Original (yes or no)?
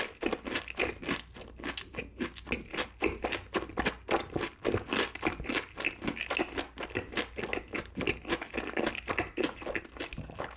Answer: yes